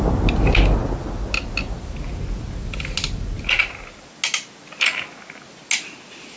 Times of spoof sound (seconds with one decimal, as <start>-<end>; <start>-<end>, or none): none